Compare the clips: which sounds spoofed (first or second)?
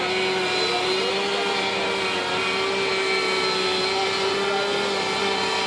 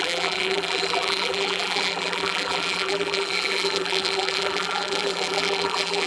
second